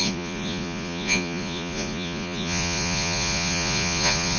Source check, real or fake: fake